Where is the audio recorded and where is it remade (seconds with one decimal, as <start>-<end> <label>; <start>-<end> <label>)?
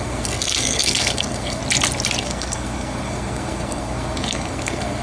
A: 0.0-1.6 remade; 1.6-2.2 recorded; 2.2-5.0 remade